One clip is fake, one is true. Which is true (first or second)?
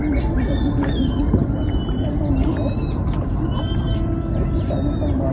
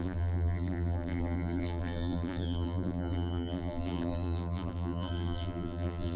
first